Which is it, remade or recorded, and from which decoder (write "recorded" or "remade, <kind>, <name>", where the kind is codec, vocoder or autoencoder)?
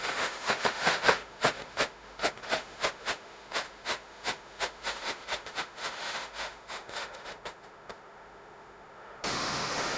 remade, autoencoder, DAC-VAE